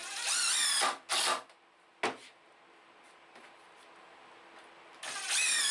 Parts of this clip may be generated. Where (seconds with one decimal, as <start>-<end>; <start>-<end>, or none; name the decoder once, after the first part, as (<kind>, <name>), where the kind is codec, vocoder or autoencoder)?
none